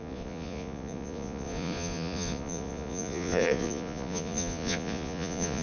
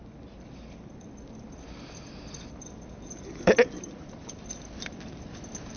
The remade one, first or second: first